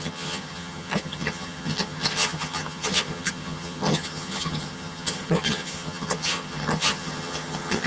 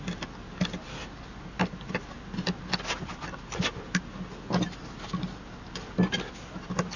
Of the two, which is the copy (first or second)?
first